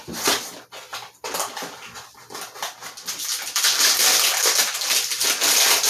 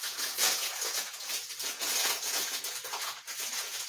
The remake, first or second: second